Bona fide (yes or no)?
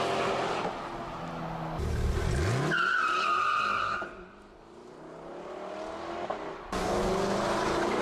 yes